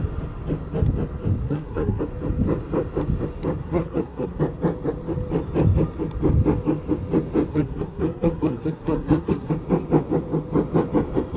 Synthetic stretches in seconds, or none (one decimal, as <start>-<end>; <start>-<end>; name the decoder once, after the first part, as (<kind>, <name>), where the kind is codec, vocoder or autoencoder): 1.4-2.0 (codec, SNAC); 3.6-4.4; 7.5-9.5